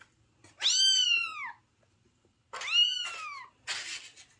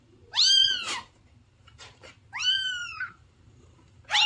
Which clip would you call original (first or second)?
first